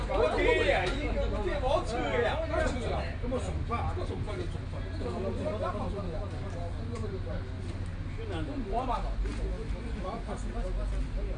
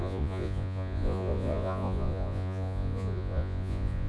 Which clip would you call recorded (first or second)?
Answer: first